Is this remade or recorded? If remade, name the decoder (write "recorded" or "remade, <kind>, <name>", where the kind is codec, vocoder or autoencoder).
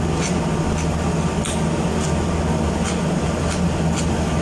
recorded